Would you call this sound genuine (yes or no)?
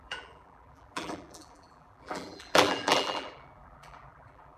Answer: no